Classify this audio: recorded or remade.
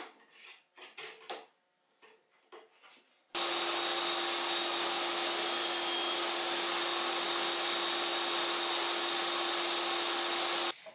recorded